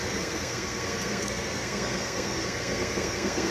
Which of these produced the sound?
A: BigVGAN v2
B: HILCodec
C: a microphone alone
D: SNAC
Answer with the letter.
D